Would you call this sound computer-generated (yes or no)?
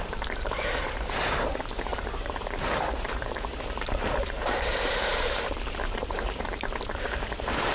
yes